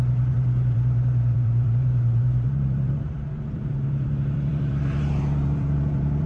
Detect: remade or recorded remade